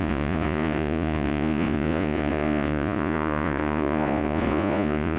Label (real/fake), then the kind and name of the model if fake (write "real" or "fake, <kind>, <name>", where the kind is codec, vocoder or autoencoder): fake, vocoder, Vocos